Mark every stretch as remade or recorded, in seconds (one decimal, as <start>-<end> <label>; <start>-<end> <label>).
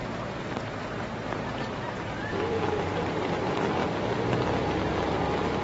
0.0-3.3 remade; 3.3-5.6 recorded